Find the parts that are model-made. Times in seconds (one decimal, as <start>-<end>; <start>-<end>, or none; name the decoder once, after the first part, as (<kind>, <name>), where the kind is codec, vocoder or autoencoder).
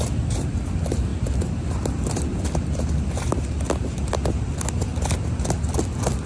1.1-3.3 (vocoder, BigVGAN v2)